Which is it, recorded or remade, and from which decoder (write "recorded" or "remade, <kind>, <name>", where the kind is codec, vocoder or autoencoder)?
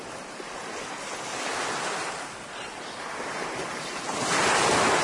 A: recorded